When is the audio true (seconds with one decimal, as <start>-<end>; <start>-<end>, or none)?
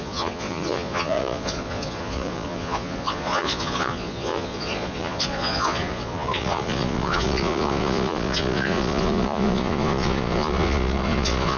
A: none